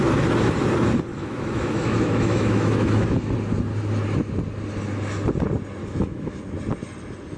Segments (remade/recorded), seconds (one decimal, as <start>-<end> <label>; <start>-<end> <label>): 0.0-1.1 recorded; 1.1-3.3 remade; 3.3-5.8 recorded; 5.8-6.4 remade; 6.4-7.4 recorded